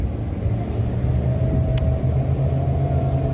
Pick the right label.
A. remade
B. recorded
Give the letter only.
B